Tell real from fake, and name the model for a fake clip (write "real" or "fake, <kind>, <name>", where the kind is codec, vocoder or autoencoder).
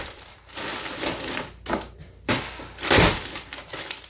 real